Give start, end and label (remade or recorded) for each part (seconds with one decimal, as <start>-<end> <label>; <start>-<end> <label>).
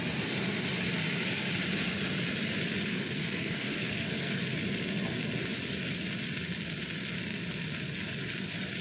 0.0-2.9 recorded; 2.9-4.4 remade; 4.4-8.8 recorded